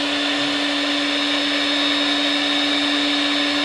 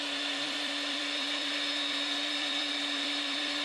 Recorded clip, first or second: first